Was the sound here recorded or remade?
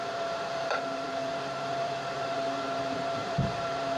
remade